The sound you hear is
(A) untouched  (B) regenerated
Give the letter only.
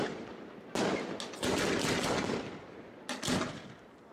A